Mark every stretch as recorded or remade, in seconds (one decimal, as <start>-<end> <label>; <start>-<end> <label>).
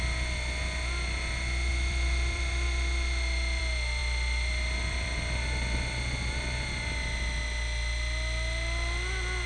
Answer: 0.0-1.7 recorded; 1.7-3.6 remade; 3.6-4.0 recorded; 4.0-5.2 remade; 5.2-9.5 recorded